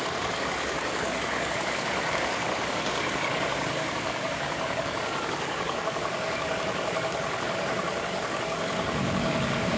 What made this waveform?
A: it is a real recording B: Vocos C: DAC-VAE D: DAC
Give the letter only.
D